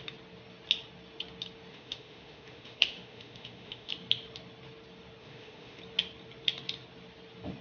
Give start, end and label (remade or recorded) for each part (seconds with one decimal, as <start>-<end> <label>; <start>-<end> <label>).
0.0-1.7 recorded; 1.7-3.9 remade; 3.9-5.2 recorded; 5.2-5.8 remade; 5.8-7.6 recorded